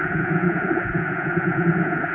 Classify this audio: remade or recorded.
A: remade